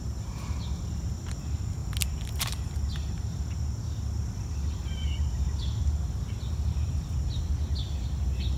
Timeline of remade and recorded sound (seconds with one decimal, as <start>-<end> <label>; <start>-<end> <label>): 0.0-8.6 recorded